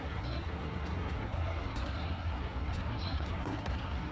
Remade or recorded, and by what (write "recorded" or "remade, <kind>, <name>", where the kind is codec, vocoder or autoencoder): remade, codec, SNAC